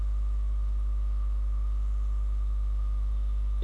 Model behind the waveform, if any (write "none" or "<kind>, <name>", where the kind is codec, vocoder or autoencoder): none